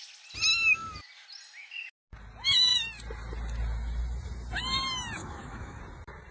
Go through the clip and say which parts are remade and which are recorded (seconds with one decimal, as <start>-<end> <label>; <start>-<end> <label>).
0.0-5.2 recorded; 5.2-5.8 remade; 5.8-6.3 recorded